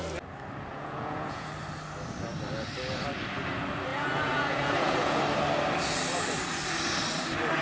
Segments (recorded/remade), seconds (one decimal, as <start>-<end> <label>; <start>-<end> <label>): 0.0-0.7 recorded; 0.7-1.5 remade; 1.5-3.9 recorded; 3.9-5.2 remade; 5.2-7.6 recorded